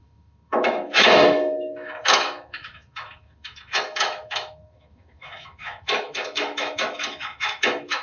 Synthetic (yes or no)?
yes